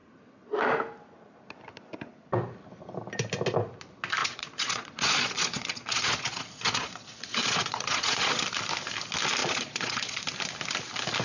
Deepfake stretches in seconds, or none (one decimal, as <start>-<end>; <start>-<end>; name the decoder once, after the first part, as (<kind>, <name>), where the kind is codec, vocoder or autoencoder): 4.2-8.4 (vocoder, Vocos); 9.4-10.2